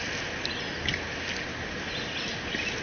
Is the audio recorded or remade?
recorded